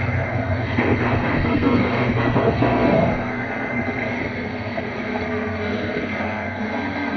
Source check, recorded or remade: remade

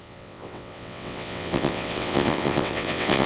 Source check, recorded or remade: remade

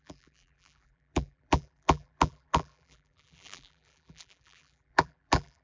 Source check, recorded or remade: remade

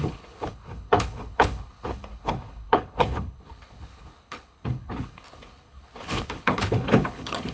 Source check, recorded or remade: remade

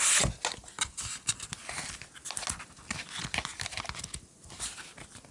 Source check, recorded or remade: recorded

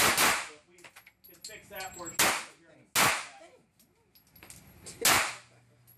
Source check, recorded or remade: recorded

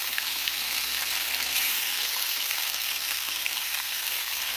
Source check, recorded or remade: remade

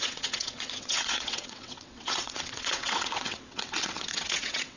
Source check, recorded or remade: remade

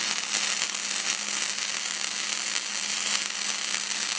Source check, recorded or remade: recorded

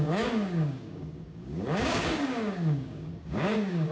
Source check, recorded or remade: remade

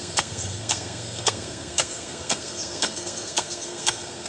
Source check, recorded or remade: remade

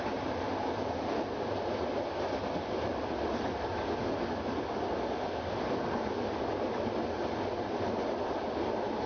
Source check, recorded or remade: recorded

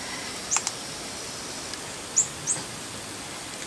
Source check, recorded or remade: recorded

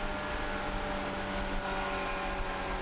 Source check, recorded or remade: recorded